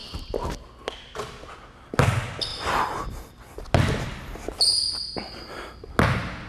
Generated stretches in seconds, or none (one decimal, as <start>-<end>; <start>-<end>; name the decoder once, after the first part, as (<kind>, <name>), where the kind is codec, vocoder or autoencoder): 2.5-3.6 (vocoder, BigVGAN v2)